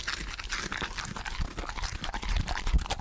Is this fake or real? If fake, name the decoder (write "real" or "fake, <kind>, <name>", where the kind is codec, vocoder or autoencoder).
real